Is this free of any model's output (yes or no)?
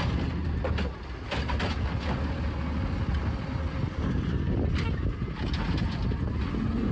yes